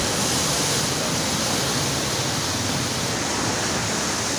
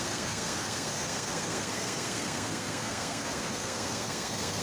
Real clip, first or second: first